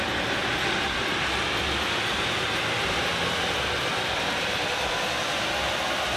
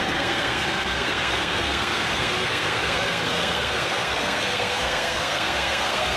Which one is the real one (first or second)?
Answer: first